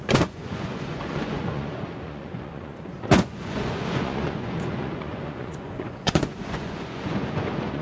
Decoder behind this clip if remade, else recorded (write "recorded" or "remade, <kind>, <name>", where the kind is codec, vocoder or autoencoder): remade, vocoder, Vocos